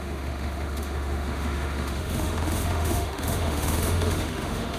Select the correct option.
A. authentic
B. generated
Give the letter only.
B